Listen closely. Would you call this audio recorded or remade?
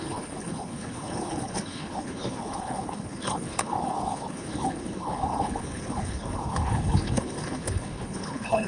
remade